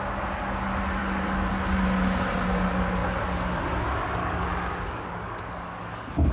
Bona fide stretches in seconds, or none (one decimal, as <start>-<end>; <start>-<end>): 0.0-1.0; 1.5-3.0; 3.6-4.2